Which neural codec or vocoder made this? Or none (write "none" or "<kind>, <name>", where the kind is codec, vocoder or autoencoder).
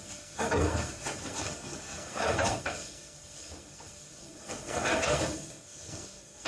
codec, SNAC